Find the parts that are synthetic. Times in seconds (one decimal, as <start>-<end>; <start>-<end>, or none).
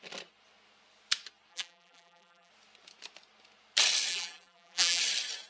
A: 1.5-2.5; 4.1-5.0